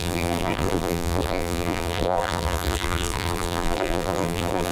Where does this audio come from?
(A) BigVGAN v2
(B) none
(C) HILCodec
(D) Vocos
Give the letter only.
A